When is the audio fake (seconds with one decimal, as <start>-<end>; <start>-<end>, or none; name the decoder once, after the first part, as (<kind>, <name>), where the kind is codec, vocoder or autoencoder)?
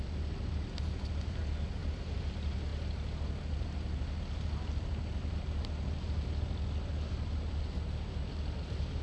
1.8-2.3 (vocoder, BigVGAN v2)